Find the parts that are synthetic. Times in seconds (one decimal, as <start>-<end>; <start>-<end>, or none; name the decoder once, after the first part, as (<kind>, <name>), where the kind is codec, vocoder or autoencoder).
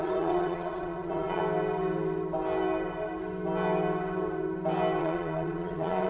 0.0-1.4 (vocoder, WaveNeXt); 5.0-6.1